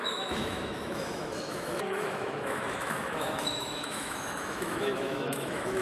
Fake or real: fake